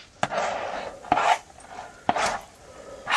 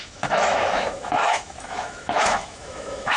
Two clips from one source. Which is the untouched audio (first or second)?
first